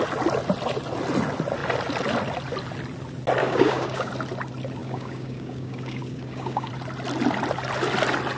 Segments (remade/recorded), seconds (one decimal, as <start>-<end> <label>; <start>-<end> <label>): 0.0-3.4 recorded; 3.4-4.1 remade; 4.1-4.8 recorded; 4.8-6.7 remade; 6.7-8.4 recorded